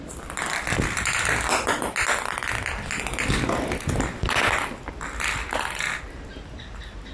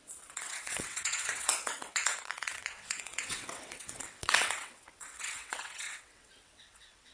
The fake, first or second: second